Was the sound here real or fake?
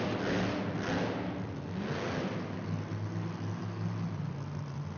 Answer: real